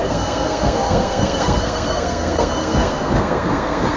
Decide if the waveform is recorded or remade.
remade